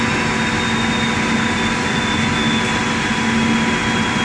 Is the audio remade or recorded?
recorded